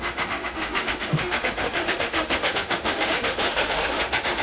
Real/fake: fake